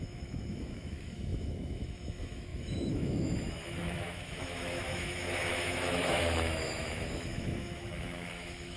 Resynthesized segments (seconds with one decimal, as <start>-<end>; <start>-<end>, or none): 0.0-8.8